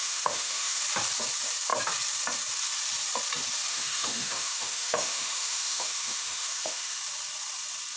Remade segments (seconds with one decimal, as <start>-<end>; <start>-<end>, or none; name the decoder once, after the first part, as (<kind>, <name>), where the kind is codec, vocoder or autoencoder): 0.0-0.8 (autoencoder, DAC-VAE); 3.7-7.0